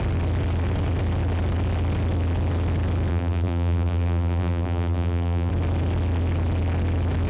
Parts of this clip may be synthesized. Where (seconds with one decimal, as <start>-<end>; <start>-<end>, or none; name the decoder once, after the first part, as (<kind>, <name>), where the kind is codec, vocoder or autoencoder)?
3.1-5.5 (vocoder, BigVGAN v2)